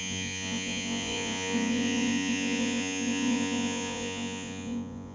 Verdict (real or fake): fake